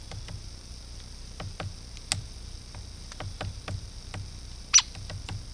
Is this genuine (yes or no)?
yes